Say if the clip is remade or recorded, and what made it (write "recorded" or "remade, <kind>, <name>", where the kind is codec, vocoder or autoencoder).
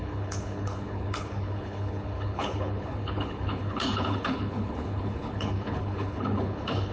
remade, codec, HILCodec